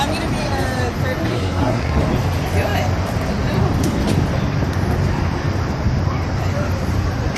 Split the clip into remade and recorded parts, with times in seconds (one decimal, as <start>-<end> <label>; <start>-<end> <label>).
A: 0.0-1.3 recorded; 1.3-2.0 remade; 2.0-7.4 recorded